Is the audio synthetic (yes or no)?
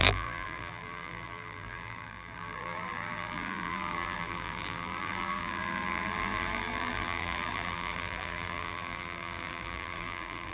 yes